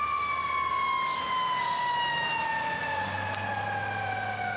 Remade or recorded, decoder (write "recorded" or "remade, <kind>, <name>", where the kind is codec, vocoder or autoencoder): recorded